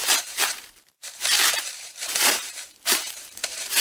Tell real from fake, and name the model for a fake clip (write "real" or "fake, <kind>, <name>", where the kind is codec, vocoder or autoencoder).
fake, vocoder, BigVGAN v2